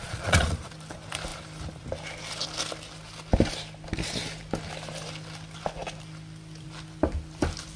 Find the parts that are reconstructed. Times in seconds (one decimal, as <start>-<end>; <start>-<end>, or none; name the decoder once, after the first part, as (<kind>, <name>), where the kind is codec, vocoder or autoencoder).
0.0-0.7 (vocoder, Vocos)